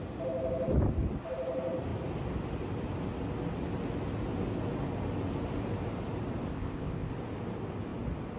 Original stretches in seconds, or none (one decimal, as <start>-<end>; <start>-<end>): 0.0-6.5; 7.1-8.4